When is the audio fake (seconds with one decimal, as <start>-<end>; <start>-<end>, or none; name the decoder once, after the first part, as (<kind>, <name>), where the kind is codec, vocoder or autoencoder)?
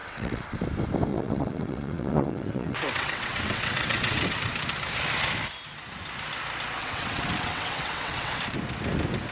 0.0-0.6 (vocoder, WaveNeXt); 1.1-4.4; 6.8-8.4